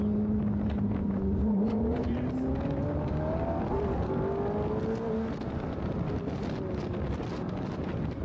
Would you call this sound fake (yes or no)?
no